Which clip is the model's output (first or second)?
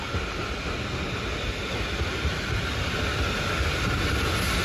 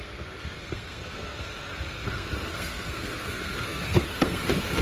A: second